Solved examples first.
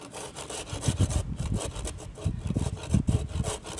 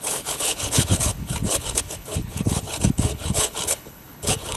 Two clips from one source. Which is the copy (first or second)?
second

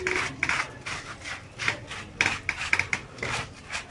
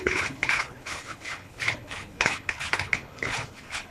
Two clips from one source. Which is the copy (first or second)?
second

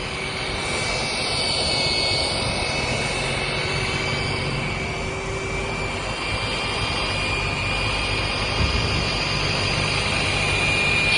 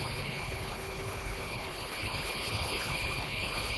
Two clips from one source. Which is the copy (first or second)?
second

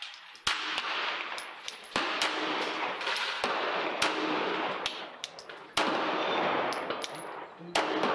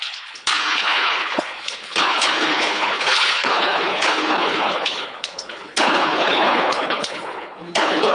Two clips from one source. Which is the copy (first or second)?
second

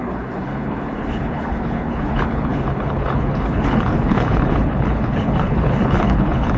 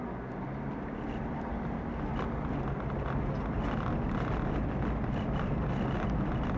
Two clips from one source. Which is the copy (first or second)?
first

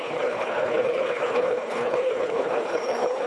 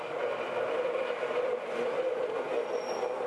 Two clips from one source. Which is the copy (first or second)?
first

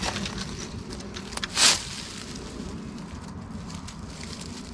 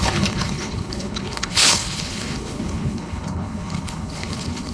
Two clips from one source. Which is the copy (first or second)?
second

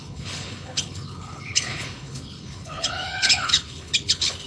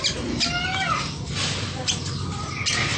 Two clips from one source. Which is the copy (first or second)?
first